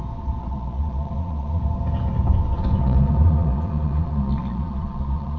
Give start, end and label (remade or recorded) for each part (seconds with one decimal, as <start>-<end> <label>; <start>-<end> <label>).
0.0-0.4 recorded; 0.4-1.6 remade; 1.6-2.8 recorded; 2.8-5.4 remade